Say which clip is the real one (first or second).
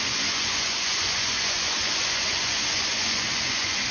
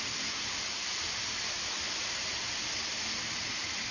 second